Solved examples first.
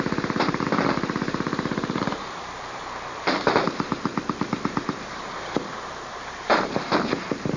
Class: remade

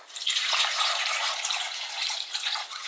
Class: remade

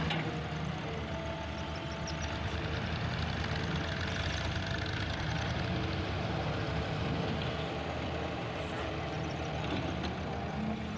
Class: recorded